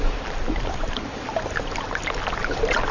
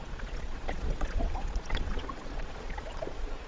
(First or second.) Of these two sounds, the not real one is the second